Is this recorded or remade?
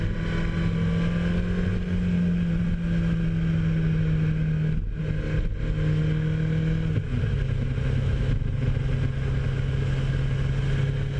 recorded